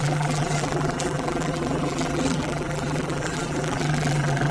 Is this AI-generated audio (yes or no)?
yes